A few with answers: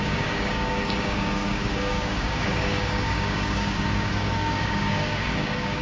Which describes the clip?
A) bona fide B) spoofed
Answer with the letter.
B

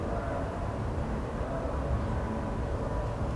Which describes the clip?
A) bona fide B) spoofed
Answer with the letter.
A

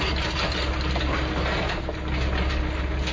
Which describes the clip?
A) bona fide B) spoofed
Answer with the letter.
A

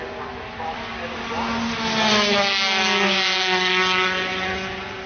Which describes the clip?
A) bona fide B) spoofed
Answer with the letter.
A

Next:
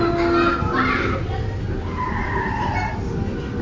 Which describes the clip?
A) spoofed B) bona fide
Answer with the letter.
B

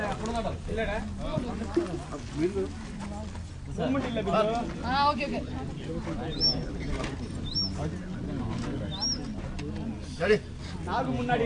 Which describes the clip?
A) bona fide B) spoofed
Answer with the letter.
A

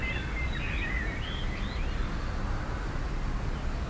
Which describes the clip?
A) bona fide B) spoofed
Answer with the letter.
A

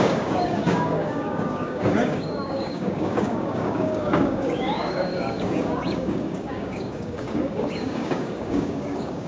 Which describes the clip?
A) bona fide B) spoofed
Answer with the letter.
B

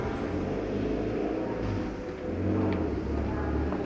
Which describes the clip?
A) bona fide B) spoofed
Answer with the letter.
A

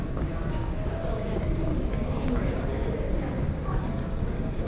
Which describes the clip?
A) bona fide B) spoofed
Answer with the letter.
B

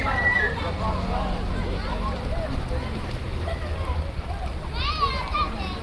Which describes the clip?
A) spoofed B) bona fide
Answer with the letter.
B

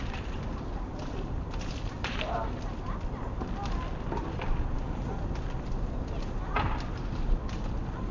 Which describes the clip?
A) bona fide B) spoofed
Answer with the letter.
A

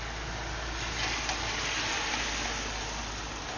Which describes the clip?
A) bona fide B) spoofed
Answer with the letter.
A